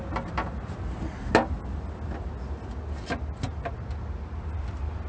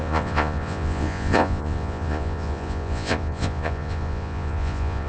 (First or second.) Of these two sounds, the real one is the first